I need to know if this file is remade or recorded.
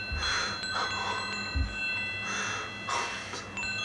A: recorded